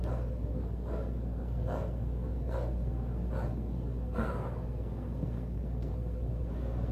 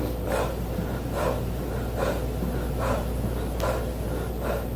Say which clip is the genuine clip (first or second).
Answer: second